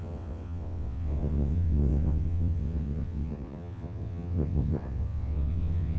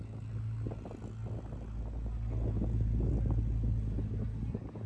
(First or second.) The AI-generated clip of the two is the first